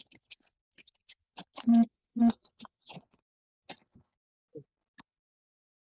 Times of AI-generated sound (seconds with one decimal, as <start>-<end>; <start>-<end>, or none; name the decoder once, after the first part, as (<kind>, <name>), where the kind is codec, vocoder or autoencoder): 0.0-3.6 (vocoder, WaveNeXt); 5.5-5.9